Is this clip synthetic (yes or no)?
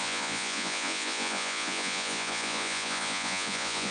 yes